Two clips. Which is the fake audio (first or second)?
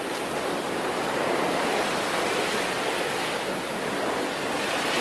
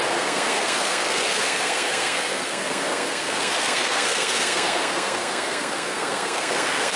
second